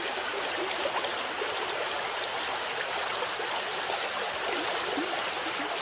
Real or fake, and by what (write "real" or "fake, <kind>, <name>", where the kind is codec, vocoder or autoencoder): real